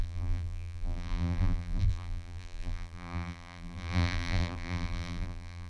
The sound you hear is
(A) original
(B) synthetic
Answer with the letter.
B